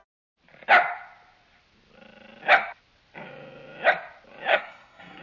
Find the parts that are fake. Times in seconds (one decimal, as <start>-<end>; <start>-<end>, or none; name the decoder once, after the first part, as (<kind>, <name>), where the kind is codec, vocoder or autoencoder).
4.5-5.2 (codec, SNAC)